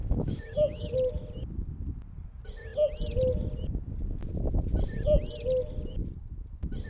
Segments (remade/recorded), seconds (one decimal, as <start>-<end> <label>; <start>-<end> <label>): 0.0-0.9 remade; 0.9-6.9 recorded